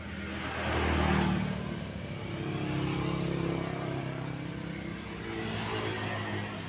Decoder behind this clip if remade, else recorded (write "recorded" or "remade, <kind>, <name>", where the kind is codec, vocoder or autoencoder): recorded